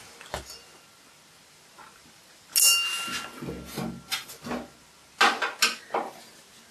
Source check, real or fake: real